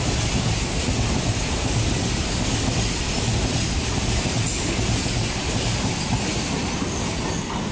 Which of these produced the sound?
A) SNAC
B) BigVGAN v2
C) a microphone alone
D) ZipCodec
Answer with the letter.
C